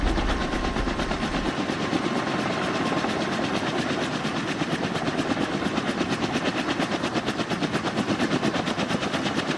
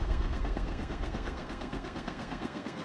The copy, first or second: second